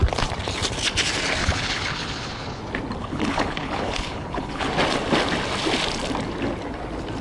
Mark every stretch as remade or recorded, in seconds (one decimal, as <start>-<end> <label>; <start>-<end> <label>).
0.0-1.4 recorded; 1.4-2.6 remade; 2.6-3.0 recorded; 3.0-4.7 remade; 4.7-7.2 recorded